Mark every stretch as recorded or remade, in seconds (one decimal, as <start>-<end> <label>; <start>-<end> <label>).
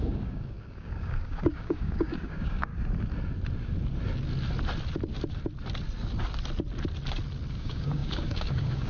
0.0-2.7 remade; 2.7-7.5 recorded; 7.5-8.9 remade